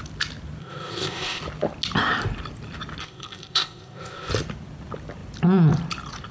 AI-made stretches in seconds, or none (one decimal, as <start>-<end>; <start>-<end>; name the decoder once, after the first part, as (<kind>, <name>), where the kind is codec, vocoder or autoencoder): 0.6-1.4 (codec, ZipCodec); 3.0-4.3